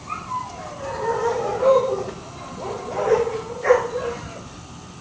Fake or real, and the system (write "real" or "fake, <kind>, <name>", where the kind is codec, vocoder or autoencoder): fake, vocoder, BigVGAN v2